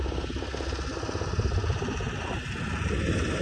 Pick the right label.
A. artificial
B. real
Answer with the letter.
B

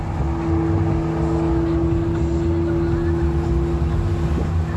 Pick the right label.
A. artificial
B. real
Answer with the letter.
B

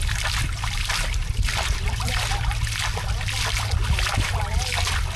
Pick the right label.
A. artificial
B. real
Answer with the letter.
B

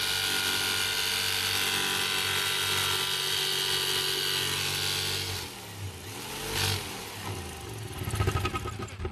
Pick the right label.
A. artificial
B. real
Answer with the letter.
B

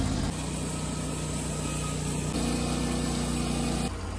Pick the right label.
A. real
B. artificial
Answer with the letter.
A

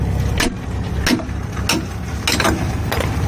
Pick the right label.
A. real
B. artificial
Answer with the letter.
A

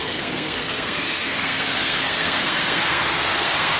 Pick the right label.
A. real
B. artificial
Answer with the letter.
B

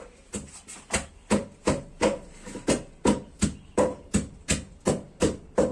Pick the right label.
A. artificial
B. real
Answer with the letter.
B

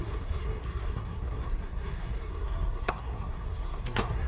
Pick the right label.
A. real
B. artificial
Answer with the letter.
B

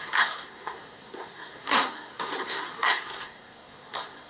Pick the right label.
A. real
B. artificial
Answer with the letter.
B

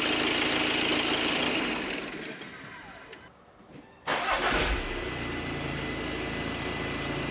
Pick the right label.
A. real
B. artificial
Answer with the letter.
A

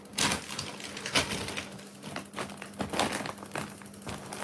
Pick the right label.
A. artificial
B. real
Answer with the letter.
B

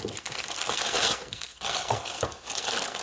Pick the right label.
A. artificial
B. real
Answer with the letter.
A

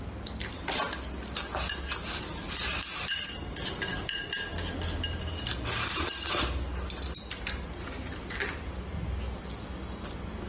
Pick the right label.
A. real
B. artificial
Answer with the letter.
A